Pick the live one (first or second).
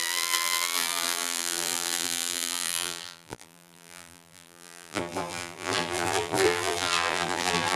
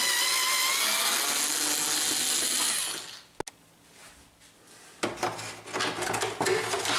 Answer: second